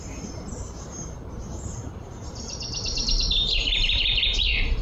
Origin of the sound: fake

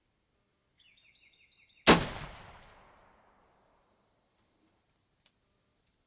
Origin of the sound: real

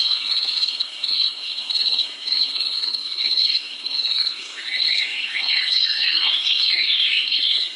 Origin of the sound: fake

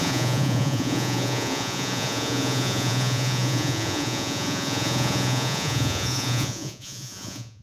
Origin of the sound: fake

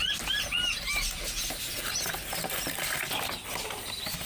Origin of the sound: real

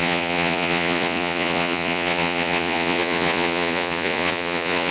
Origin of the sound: fake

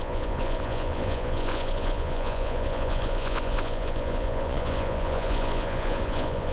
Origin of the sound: fake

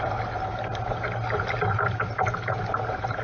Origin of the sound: real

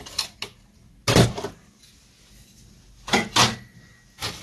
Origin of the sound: real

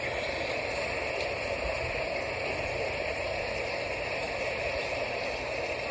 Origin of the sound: real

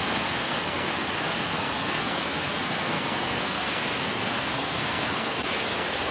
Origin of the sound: fake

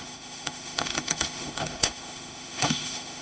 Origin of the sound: fake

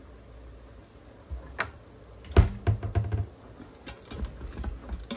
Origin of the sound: real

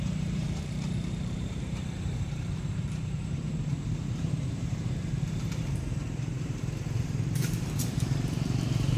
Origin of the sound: fake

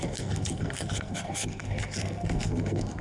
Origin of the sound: fake